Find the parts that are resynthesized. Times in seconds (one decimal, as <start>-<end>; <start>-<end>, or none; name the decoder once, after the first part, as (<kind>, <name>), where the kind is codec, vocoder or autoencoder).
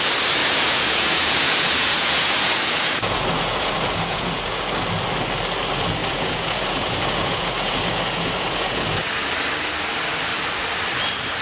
0.4-4.6 (vocoder, Vocos); 6.0-9.1